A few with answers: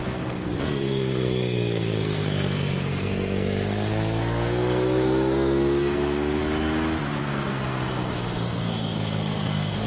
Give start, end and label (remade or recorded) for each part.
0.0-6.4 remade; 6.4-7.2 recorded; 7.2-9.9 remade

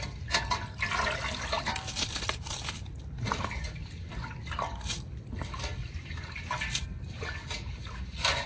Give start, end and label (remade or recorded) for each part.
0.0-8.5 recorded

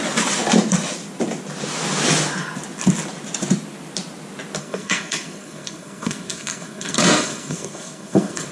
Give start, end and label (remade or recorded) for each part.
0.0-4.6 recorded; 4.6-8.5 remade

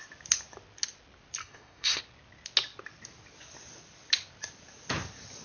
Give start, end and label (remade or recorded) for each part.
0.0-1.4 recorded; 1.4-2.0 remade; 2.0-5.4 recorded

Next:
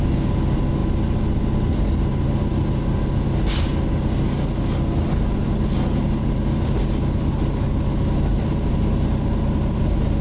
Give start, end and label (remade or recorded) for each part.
0.0-10.2 recorded

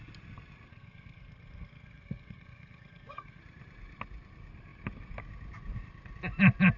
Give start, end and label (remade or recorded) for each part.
0.0-0.7 recorded; 0.7-3.4 remade; 3.4-6.8 recorded